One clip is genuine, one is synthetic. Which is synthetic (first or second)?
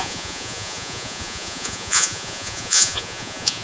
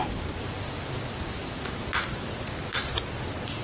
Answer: first